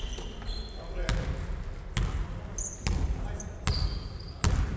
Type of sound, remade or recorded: recorded